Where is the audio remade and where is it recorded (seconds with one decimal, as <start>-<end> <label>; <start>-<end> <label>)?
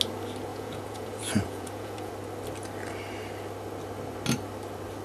0.0-0.5 recorded; 0.5-2.1 remade; 2.1-5.0 recorded